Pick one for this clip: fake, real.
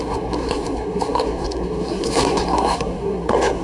fake